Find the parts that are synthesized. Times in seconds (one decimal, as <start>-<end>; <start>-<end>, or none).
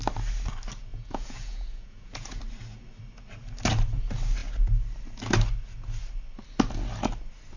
0.9-2.4